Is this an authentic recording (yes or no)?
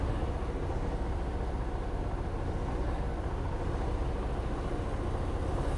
yes